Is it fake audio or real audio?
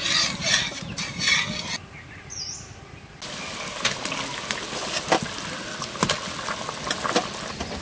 real